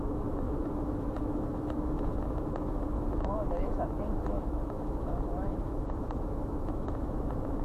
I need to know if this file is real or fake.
fake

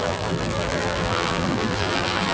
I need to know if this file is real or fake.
fake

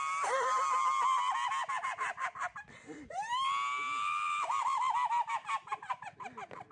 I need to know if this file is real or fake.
real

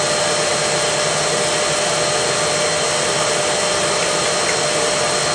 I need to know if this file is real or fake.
real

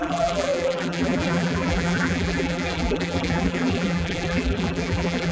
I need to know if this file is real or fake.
fake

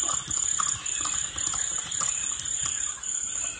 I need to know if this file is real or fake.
real